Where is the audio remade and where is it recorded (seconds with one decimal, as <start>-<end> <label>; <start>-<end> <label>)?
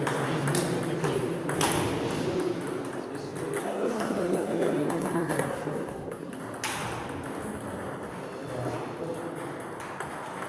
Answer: 0.0-3.6 recorded; 3.6-6.3 remade; 6.3-10.5 recorded